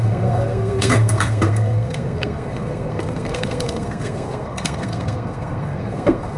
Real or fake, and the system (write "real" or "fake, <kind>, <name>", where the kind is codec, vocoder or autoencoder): fake, codec, SNAC